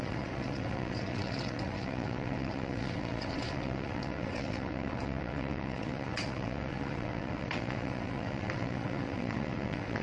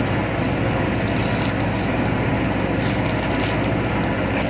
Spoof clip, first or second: first